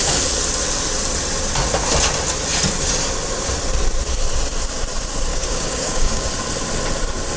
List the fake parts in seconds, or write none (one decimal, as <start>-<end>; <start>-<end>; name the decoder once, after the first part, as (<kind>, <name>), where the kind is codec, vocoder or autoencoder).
5.3-6.3 (codec, DAC)

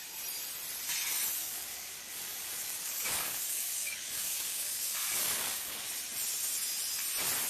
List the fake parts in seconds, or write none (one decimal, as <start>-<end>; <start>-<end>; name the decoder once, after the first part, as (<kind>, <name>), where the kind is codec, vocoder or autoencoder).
1.4-5.9 (codec, DAC)

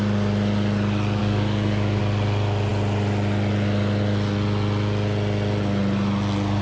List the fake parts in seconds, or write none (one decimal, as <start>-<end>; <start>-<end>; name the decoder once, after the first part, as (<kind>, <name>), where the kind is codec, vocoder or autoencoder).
1.2-2.0 (codec, DAC)

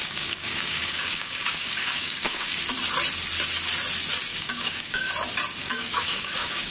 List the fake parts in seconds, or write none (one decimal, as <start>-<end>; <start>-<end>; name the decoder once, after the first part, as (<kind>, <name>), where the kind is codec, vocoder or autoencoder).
0.0-2.6 (codec, DAC); 4.3-5.1; 5.6-6.7